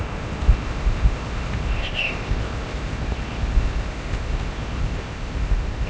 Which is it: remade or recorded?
remade